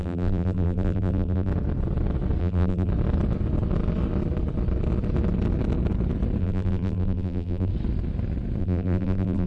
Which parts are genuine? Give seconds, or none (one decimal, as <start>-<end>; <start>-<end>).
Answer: 1.5-2.4; 2.9-6.4; 7.7-8.6